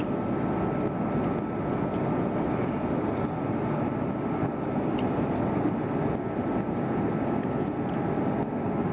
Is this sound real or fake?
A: real